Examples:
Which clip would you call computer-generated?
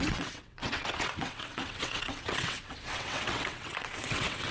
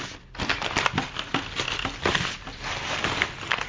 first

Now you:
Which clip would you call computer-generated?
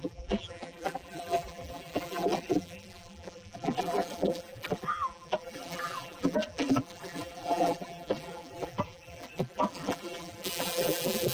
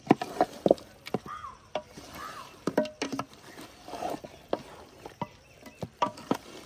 first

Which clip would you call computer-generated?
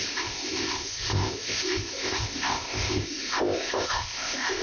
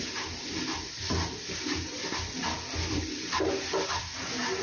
first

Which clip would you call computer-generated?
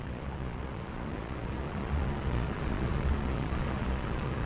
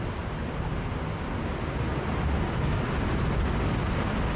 first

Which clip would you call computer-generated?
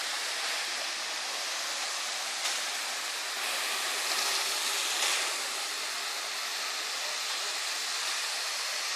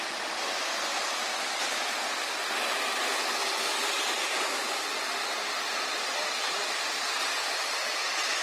first